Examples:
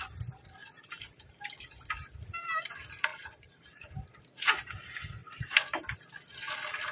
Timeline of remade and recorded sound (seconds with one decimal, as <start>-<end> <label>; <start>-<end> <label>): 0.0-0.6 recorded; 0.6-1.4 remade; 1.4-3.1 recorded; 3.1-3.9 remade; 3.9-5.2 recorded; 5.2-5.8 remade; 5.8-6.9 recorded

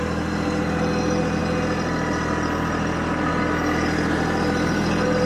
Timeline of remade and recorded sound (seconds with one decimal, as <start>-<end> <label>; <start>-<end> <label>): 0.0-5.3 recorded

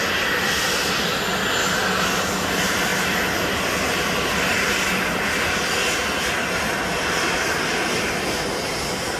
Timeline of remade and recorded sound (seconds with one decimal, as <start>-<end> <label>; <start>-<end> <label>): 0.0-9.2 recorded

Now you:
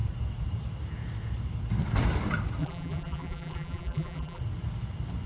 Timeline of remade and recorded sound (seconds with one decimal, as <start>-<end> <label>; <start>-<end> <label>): 0.0-2.6 recorded; 2.6-4.4 remade; 4.4-5.3 recorded

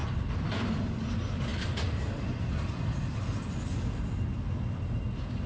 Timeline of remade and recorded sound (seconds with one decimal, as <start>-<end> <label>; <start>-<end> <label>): 0.0-0.8 remade; 0.8-5.5 recorded

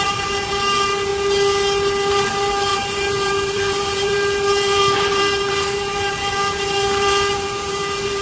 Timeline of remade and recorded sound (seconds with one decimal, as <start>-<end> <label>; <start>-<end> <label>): 0.0-1.1 remade; 1.1-2.1 recorded; 2.1-8.2 remade